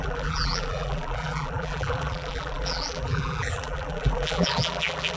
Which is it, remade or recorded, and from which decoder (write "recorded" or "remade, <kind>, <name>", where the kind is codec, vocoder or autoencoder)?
remade, vocoder, BigVGAN v2